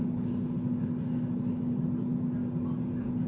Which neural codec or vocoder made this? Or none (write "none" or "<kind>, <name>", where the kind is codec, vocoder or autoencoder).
none